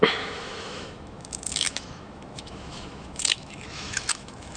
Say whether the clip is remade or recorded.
remade